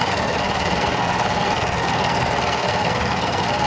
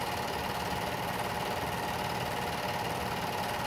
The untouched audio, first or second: second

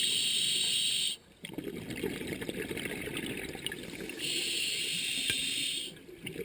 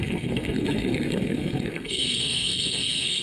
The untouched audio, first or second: first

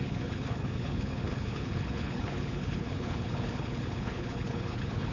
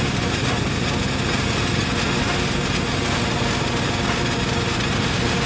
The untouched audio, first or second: second